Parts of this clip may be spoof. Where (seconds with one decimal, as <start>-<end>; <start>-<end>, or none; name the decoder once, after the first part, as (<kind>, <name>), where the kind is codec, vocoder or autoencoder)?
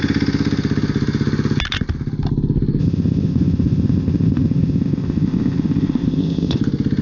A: 2.8-6.6 (codec, ZipCodec)